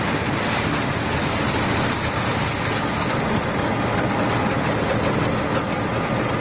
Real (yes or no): yes